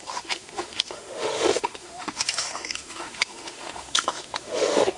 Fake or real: fake